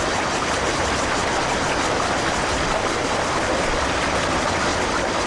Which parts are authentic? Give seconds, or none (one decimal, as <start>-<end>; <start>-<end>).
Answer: 0.0-4.7